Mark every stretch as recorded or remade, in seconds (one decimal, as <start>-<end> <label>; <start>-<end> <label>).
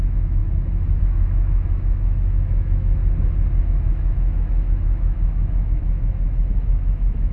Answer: 0.0-3.0 remade; 3.0-3.6 recorded; 3.6-7.3 remade